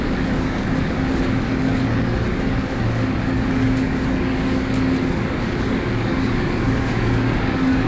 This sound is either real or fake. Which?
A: fake